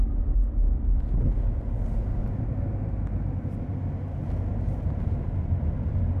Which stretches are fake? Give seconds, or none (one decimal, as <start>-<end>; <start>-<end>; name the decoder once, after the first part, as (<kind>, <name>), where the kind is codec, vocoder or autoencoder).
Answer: 2.2-2.8 (vocoder, BigVGAN v2)